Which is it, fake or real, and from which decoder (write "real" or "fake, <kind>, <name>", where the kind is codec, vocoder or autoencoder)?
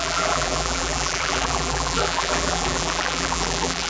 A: fake, vocoder, BigVGAN v2